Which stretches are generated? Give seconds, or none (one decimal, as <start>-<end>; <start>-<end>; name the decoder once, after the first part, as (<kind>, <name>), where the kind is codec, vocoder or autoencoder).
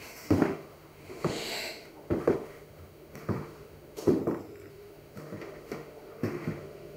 0.0-4.2 (autoencoder, DAC-VAE); 4.7-7.0